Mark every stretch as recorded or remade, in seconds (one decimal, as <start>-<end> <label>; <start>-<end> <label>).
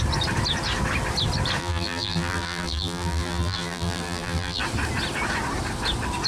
0.0-1.6 recorded; 1.6-4.6 remade; 4.6-6.3 recorded